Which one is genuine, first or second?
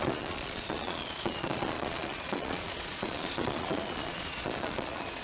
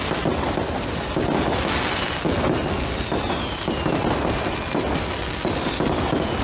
second